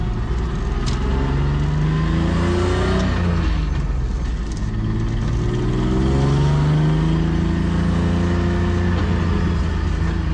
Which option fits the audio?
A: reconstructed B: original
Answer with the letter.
B